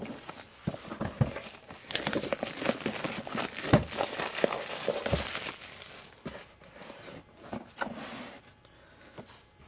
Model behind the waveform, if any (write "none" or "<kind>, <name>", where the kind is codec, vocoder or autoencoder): none